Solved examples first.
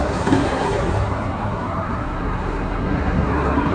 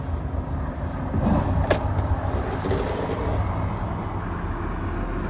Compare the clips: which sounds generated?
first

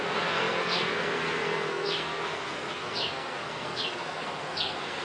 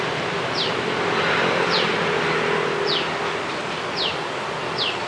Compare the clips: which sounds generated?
first